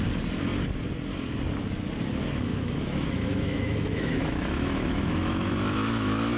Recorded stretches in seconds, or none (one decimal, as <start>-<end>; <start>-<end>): 0.0-2.5